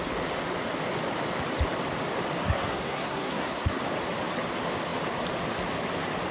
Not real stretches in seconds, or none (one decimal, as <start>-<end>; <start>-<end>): 2.4-3.8